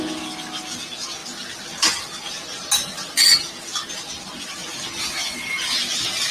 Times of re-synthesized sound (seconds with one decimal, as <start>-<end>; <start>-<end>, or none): none